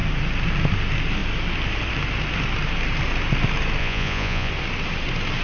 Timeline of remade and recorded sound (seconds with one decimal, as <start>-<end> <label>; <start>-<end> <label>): 0.0-3.8 recorded; 3.8-4.5 remade; 4.5-5.4 recorded